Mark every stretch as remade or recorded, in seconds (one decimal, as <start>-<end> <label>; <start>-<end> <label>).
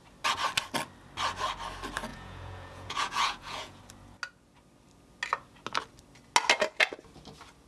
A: 0.0-2.1 recorded; 2.1-3.8 remade; 3.8-7.7 recorded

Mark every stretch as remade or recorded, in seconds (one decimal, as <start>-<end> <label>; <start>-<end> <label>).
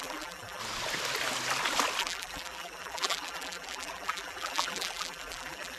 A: 0.0-0.6 remade; 0.6-2.0 recorded; 2.0-5.8 remade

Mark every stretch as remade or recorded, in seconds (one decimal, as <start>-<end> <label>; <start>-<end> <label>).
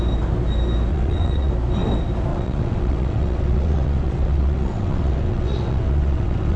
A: 0.0-0.9 recorded; 0.9-1.5 remade; 1.5-2.3 recorded; 2.3-6.6 remade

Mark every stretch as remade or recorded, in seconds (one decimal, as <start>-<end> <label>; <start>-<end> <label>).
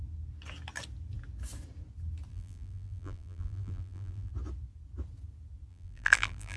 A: 0.0-2.3 recorded; 2.3-4.3 remade; 4.3-5.7 recorded; 5.7-6.6 remade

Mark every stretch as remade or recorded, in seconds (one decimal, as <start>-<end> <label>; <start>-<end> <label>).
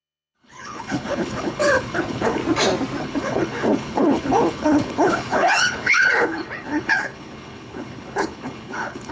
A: 0.0-2.4 remade; 2.4-3.0 recorded; 3.0-9.1 remade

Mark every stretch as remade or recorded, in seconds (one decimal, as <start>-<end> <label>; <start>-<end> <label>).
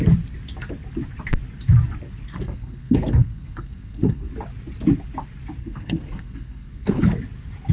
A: 0.0-2.3 recorded; 2.3-4.3 remade; 4.3-5.6 recorded; 5.6-7.0 remade; 7.0-7.7 recorded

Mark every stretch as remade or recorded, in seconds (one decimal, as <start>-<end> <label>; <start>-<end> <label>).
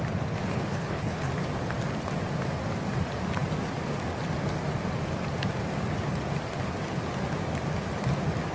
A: 0.0-0.4 recorded; 0.4-1.3 remade; 1.3-8.5 recorded